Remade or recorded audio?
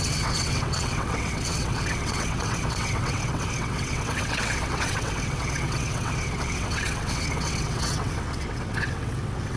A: remade